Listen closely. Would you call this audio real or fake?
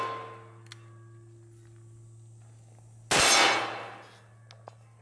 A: real